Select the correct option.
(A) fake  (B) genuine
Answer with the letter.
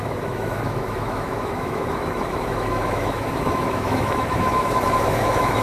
A